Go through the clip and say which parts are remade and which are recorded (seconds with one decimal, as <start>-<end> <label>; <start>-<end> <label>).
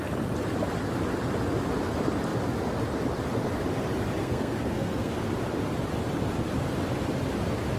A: 0.0-4.2 recorded; 4.2-5.1 remade; 5.1-7.8 recorded